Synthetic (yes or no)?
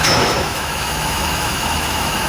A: yes